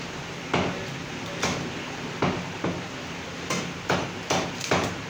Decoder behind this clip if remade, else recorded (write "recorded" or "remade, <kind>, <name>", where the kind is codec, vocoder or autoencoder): recorded